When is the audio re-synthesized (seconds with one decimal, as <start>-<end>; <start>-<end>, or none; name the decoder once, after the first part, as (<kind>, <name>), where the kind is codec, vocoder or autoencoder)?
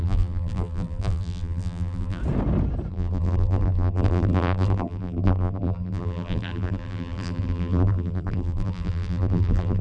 0.0-2.2 (vocoder, BigVGAN v2); 2.9-9.8